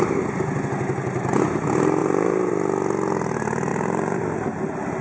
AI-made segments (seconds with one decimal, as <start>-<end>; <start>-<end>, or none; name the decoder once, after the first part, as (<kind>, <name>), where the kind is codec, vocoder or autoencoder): 2.0-2.5 (vocoder, BigVGAN v2); 3.7-4.2